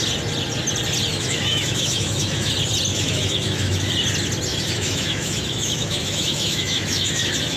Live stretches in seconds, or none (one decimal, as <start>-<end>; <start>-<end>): 0.0-1.1; 2.5-2.9; 3.9-4.5